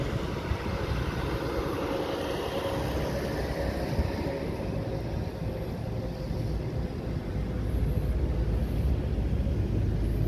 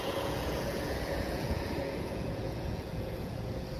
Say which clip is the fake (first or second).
second